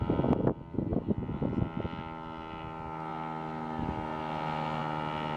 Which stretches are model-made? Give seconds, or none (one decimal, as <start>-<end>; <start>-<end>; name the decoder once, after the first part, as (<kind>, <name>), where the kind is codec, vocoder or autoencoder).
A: none